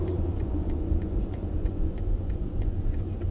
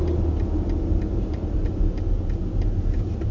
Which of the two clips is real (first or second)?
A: second